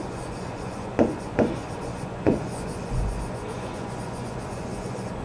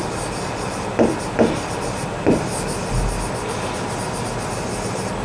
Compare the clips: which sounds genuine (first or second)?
second